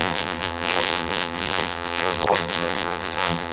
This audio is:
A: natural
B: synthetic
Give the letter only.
B